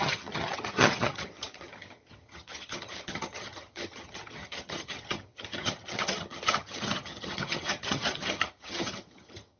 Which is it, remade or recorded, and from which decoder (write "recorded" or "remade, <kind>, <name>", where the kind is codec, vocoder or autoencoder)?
remade, vocoder, HiFi-GAN